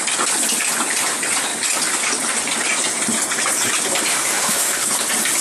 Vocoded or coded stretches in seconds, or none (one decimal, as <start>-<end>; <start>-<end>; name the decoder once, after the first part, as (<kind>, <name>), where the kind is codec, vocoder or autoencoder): 4.1-4.9 (autoencoder, DAC-VAE)